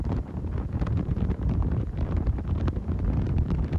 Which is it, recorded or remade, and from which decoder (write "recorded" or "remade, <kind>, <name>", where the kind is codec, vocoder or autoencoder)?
remade, vocoder, BigVGAN v2